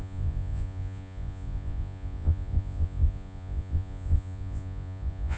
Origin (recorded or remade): remade